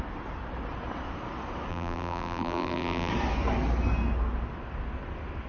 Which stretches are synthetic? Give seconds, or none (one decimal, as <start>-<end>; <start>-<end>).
1.7-3.1